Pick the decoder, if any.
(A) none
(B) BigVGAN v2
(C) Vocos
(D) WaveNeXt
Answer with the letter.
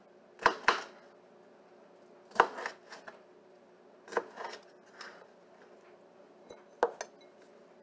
A